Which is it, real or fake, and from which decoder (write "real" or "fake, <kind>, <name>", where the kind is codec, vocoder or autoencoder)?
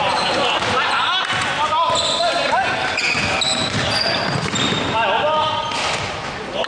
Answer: real